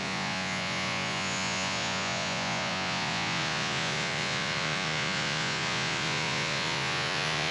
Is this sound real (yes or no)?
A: no